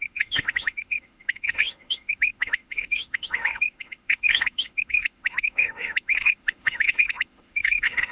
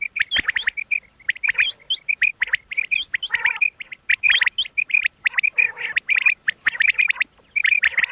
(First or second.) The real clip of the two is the second